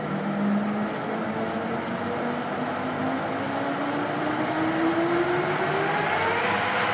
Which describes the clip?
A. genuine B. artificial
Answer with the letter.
A